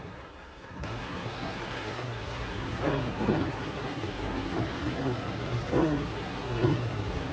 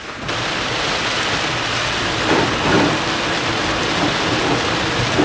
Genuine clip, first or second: second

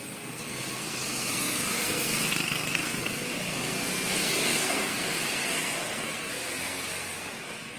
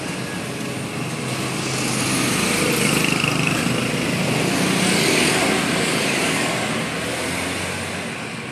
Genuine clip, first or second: second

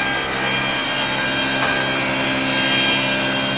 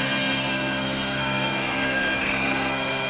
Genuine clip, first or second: first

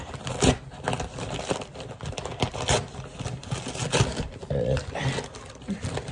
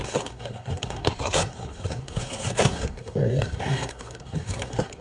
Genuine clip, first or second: first